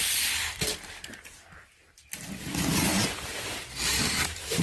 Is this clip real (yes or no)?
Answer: yes